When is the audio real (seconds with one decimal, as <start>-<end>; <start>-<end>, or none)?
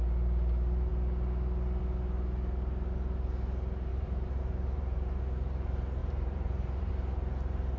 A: 0.0-3.9; 5.2-6.0; 6.9-7.8